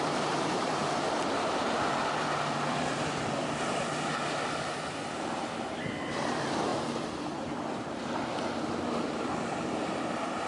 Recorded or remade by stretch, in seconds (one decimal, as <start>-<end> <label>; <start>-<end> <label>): 0.0-0.8 remade; 0.8-2.0 recorded; 2.0-10.5 remade

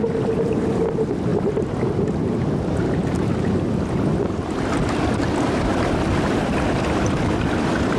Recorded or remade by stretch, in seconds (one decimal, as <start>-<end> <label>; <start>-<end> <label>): 0.0-8.0 recorded